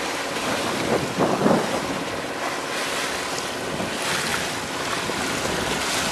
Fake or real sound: real